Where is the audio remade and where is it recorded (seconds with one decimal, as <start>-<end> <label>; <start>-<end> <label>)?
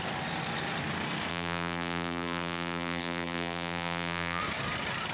0.0-1.3 recorded; 1.3-4.4 remade; 4.4-5.1 recorded